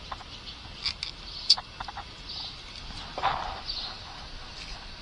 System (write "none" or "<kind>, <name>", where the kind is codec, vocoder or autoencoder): none